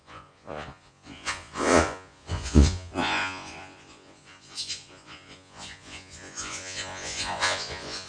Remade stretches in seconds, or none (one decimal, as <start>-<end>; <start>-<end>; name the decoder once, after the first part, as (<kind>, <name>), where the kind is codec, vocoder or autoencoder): 0.0-8.1 (vocoder, Vocos)